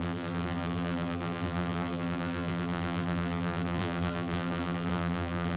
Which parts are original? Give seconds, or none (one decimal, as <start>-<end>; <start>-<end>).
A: none